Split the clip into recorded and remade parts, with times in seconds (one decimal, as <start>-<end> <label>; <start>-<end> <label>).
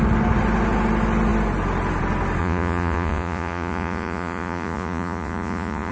0.0-2.4 recorded; 2.4-5.9 remade